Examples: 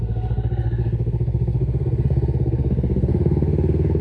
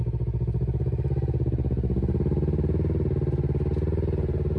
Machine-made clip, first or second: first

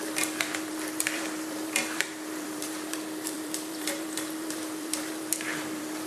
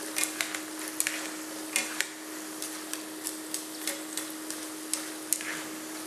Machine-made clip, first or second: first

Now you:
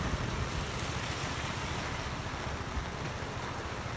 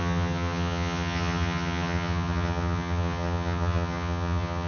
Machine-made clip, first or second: second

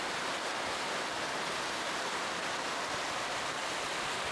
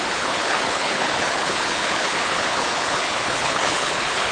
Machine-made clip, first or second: second